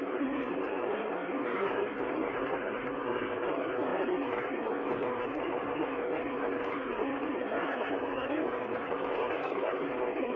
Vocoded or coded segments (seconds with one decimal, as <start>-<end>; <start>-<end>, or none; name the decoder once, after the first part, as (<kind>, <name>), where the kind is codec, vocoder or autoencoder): 0.0-10.4 (codec, SNAC)